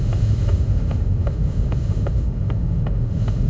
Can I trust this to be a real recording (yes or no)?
no